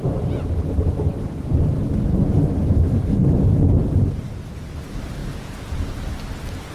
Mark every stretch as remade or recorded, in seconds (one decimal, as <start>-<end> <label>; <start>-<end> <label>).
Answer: 0.0-5.2 recorded; 5.2-6.1 remade; 6.1-6.7 recorded

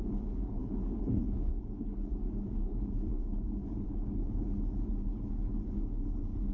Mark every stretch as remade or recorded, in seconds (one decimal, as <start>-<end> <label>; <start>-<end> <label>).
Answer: 0.0-6.5 remade

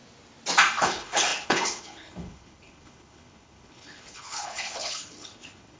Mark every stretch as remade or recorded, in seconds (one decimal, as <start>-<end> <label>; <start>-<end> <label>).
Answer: 0.0-0.8 recorded; 0.8-5.8 remade

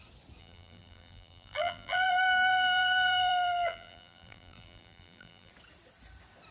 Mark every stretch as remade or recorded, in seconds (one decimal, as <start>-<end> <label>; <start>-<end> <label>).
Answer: 0.0-0.4 recorded; 0.4-2.1 remade; 2.1-2.5 recorded; 2.5-5.5 remade; 5.5-6.5 recorded

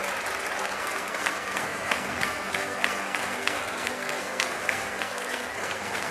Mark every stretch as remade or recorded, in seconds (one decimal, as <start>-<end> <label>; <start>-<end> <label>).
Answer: 0.0-0.6 recorded; 0.6-6.1 remade